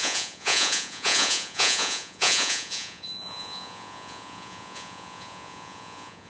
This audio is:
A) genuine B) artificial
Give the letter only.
B